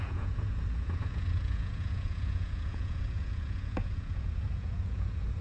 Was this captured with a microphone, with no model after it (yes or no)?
no